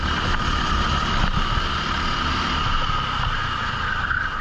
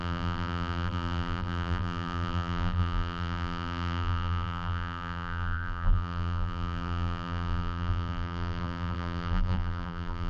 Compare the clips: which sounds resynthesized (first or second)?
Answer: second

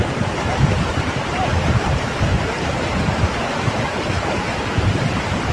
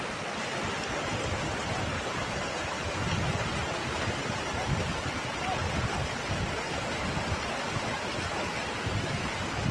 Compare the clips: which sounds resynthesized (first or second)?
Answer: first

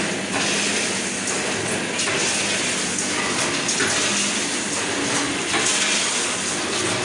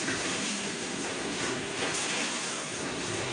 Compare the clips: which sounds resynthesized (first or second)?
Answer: second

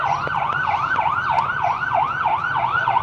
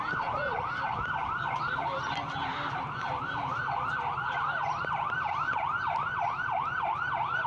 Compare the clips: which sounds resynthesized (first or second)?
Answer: first